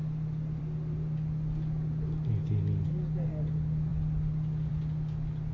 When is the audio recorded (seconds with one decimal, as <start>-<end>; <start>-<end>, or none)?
0.0-5.5

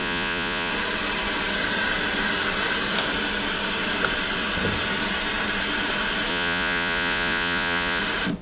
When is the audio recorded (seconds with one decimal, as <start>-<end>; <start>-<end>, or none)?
0.7-6.3; 8.0-8.4

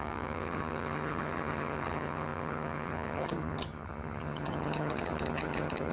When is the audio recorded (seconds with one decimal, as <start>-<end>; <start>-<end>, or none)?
none

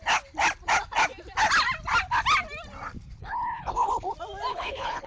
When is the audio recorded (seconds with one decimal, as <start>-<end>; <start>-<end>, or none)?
0.0-3.2; 4.1-4.5

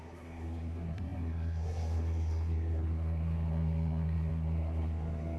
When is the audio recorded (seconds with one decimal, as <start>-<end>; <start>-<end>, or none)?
none

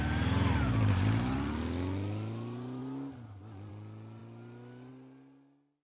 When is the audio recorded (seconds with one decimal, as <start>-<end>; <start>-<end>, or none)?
0.0-5.8